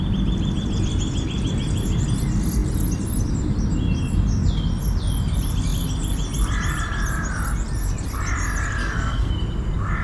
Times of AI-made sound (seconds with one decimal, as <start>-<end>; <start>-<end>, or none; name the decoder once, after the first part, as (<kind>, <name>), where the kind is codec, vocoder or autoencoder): 8.8-9.3 (codec, SNAC)